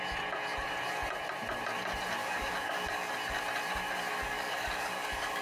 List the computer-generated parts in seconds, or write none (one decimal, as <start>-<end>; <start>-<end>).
2.2-3.1; 4.2-5.4